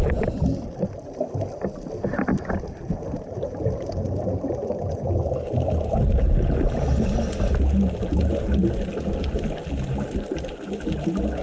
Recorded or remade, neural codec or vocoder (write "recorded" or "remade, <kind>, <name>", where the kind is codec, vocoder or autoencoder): recorded